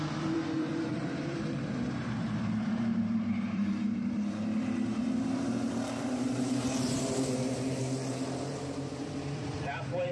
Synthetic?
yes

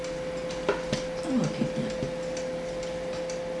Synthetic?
no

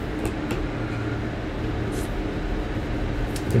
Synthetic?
no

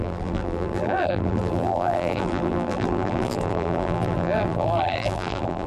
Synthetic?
yes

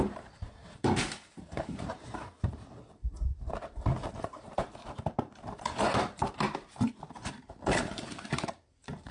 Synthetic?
yes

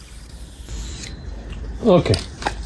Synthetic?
no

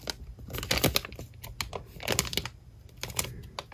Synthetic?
no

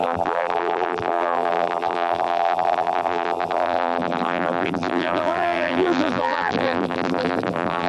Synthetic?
yes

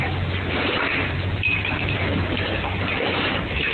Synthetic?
yes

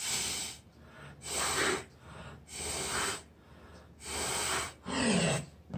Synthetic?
no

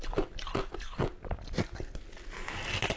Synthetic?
no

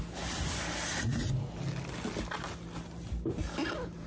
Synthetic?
no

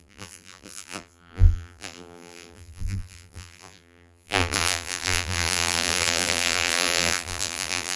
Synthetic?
yes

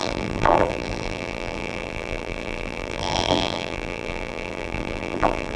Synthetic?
yes